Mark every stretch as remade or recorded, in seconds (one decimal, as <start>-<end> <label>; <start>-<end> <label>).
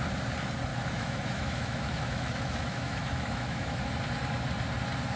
0.0-0.7 recorded; 0.7-3.8 remade; 3.8-5.2 recorded